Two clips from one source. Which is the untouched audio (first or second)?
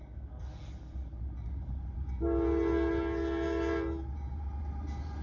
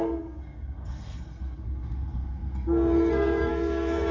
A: first